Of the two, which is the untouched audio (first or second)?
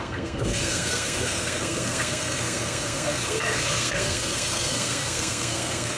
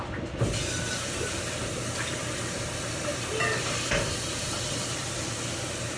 second